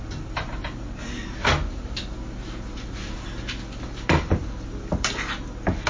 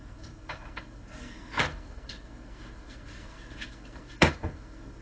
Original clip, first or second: first